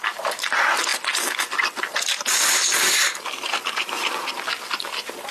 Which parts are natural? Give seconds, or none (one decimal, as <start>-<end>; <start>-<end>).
0.0-5.3